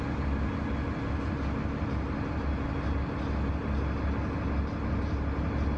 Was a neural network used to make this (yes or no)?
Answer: no